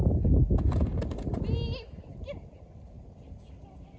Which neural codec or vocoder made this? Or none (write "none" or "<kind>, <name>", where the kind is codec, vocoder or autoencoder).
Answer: none